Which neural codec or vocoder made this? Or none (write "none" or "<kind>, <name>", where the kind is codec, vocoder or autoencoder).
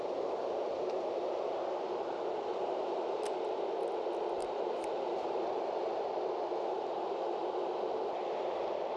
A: none